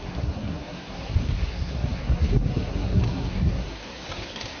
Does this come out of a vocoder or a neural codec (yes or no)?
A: yes